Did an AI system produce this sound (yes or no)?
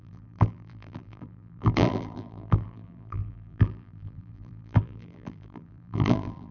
yes